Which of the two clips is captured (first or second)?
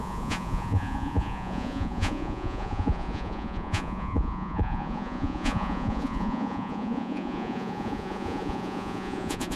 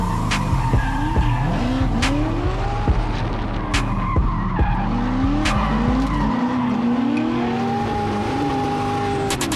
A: second